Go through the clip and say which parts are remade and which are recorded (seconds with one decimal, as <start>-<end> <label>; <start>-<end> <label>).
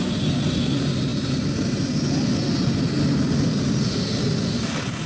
0.0-5.1 recorded